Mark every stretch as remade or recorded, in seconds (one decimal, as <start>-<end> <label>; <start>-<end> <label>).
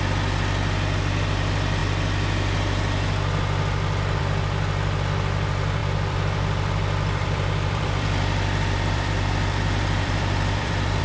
0.0-5.8 recorded; 5.8-11.0 remade